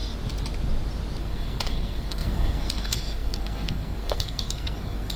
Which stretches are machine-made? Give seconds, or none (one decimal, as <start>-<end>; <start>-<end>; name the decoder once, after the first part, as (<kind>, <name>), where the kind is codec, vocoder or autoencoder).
1.2-5.2 (codec, SNAC)